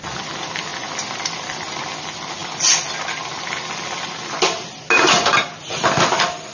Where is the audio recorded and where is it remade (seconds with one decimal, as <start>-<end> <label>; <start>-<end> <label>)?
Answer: 0.0-0.7 recorded; 0.7-1.8 remade; 1.8-6.5 recorded